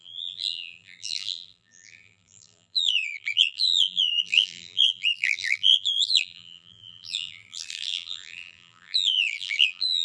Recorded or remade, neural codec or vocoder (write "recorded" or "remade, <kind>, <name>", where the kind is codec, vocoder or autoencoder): remade, vocoder, BigVGAN v2